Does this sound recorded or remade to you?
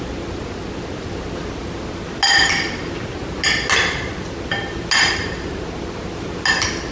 recorded